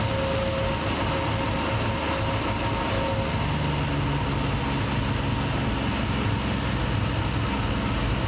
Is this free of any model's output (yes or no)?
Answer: yes